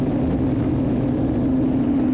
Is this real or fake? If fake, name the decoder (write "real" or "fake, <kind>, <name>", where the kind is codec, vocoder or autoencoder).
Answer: real